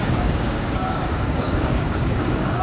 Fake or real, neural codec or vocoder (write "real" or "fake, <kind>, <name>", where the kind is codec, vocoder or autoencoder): fake, codec, DAC